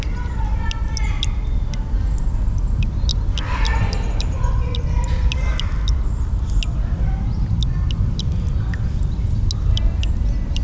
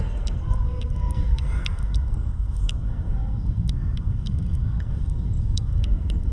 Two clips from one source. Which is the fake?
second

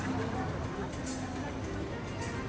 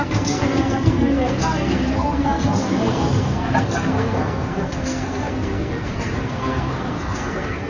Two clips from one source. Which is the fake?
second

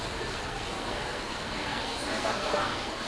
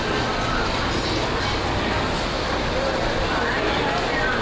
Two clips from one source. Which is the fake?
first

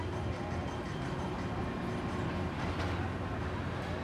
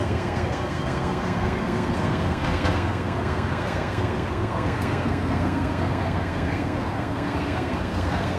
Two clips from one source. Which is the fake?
second